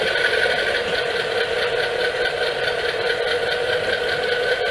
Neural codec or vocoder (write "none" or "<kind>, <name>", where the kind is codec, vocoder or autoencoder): none